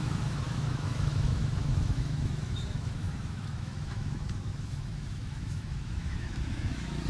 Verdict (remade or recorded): remade